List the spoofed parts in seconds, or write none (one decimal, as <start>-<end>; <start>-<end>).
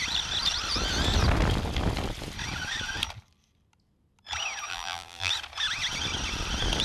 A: 4.7-5.3